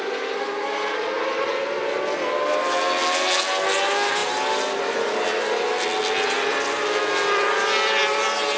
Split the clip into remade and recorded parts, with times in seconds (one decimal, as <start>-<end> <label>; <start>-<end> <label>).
0.0-8.6 recorded